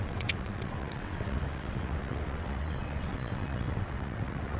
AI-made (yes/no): yes